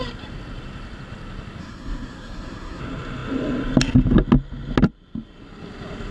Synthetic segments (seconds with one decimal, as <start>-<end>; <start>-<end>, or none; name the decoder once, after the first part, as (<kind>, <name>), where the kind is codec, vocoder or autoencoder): 1.6-2.8 (codec, SNAC)